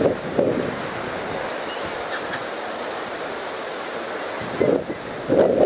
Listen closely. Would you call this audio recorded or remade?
recorded